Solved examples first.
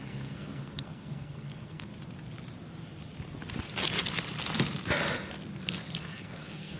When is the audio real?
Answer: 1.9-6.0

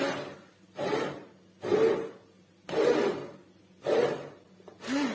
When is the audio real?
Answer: 0.0-5.1

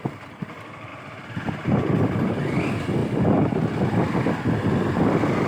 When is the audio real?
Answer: 0.0-5.5

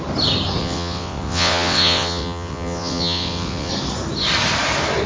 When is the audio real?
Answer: 0.0-0.6; 3.7-5.1

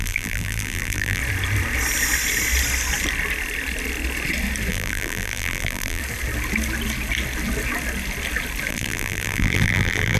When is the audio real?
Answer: 1.2-4.7; 6.0-8.7

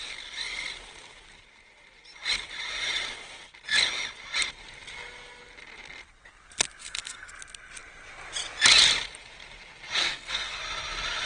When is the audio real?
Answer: 0.0-6.8; 7.3-10.0; 10.6-11.3

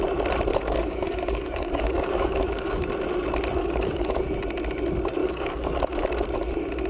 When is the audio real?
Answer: 0.0-0.5; 2.8-3.6; 4.2-5.2; 5.8-6.9